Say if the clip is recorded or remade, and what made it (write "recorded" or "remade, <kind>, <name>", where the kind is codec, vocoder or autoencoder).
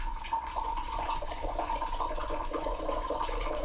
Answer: remade, vocoder, Vocos